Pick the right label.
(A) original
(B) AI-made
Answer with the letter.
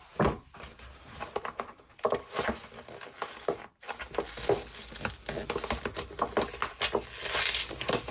A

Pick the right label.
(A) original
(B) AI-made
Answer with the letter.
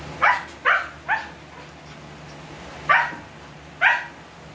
A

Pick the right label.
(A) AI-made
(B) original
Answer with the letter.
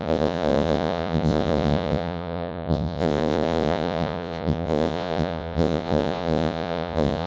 A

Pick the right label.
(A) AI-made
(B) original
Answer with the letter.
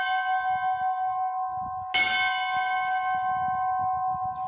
B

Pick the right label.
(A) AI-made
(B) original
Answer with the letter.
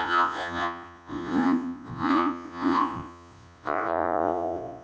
A